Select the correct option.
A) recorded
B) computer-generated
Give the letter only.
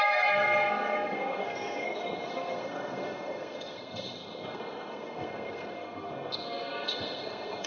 B